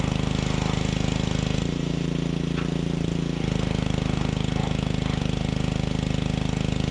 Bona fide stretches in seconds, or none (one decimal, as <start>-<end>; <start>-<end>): 0.0-4.6; 5.2-6.9